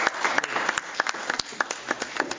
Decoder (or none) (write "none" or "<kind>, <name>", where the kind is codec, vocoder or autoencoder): none